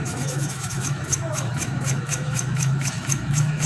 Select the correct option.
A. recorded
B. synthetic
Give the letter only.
B